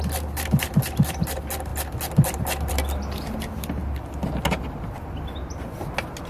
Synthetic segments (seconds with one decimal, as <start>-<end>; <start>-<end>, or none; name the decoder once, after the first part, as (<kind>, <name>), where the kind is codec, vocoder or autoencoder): 0.0-1.7 (vocoder, BigVGAN v2); 2.7-3.8